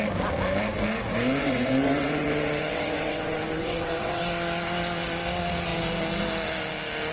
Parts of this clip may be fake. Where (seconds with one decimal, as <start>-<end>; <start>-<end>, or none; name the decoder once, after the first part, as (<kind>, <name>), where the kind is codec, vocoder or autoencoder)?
1.4-4.2 (vocoder, WaveNeXt)

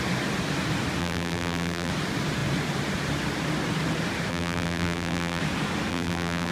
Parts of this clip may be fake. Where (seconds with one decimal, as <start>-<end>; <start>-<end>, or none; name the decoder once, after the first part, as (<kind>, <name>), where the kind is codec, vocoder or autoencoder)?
1.0-1.9 (vocoder, BigVGAN v2); 4.3-5.4; 5.9-6.5

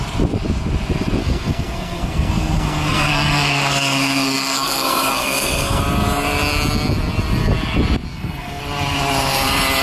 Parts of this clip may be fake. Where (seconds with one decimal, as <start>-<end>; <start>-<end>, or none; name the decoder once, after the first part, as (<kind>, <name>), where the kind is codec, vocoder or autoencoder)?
1.2-5.8 (codec, SNAC); 8.1-8.6

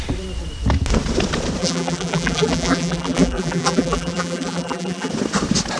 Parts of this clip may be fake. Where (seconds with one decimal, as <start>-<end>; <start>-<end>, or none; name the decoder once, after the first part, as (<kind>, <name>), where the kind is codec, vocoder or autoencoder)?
1.6-5.1 (vocoder, BigVGAN v2)

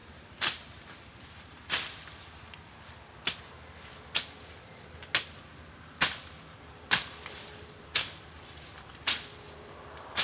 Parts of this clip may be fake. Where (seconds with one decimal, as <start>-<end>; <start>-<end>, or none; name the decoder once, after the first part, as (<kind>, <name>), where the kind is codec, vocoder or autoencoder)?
0.0-3.0 (vocoder, BigVGAN v2); 6.2-8.9

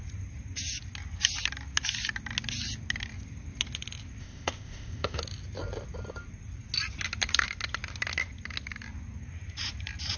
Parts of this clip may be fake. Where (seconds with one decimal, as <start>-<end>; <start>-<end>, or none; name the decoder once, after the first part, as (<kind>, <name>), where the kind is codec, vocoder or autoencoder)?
4.2-5.2 (codec, ZipCodec)